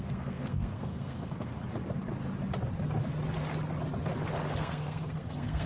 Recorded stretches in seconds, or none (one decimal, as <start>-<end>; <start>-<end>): 1.5-4.6